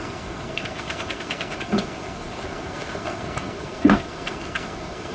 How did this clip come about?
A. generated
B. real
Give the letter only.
A